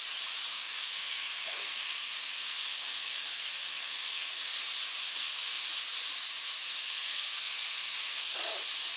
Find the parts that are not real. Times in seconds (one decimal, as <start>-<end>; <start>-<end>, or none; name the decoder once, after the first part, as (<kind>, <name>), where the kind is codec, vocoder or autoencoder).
0.5-4.5 (codec, SNAC); 5.0-5.7; 6.6-8.4

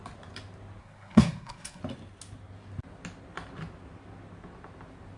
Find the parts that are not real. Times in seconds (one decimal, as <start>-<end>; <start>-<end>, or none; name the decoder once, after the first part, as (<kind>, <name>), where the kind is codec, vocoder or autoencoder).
0.8-1.8 (codec, SNAC)

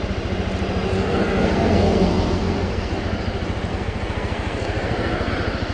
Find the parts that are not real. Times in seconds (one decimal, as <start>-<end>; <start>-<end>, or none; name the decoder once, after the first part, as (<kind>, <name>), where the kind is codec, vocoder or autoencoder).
0.9-3.0 (codec, SNAC); 3.7-5.3

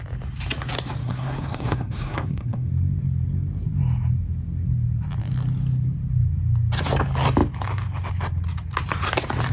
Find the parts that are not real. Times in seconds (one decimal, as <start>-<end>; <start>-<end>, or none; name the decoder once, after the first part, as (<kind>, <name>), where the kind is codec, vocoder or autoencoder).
1.0-2.7 (codec, SNAC)

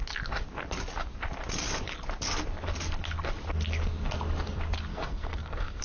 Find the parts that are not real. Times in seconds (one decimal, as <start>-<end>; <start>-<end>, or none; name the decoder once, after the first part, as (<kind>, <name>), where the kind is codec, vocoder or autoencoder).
4.9-5.8 (codec, SNAC)

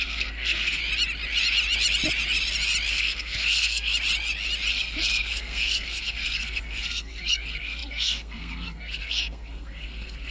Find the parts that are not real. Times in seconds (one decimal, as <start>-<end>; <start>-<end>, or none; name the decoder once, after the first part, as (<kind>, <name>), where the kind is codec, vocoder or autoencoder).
0.0-0.8 (codec, SNAC); 2.9-3.9; 4.7-10.3

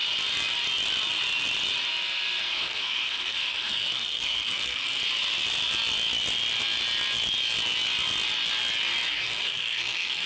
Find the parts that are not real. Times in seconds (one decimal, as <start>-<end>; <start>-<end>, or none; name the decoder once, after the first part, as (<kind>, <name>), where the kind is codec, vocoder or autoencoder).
2.4-5.0 (codec, SNAC); 9.1-10.3